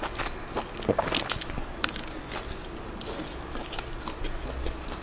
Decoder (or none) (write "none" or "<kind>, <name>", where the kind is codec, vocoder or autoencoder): none